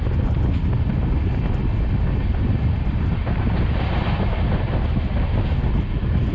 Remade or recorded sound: recorded